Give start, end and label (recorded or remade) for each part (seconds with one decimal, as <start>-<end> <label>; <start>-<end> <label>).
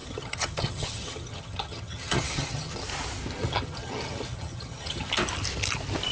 0.0-2.8 remade; 2.8-3.4 recorded; 3.4-5.1 remade; 5.1-6.1 recorded